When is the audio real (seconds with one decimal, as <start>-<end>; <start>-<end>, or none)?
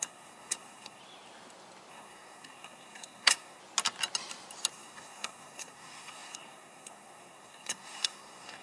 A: 1.0-1.9; 3.6-4.7